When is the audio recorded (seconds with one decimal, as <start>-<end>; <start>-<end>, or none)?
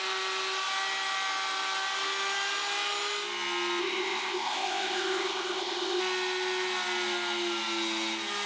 0.0-3.8; 6.0-8.5